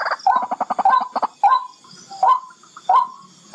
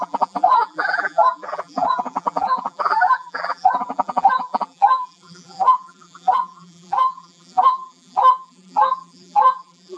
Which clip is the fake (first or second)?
second